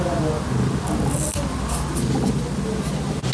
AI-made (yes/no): no